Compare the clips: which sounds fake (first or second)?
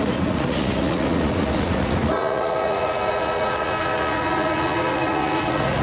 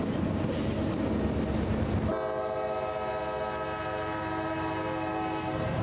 first